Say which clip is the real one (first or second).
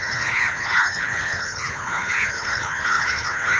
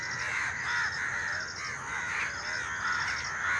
second